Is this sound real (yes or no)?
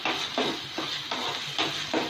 yes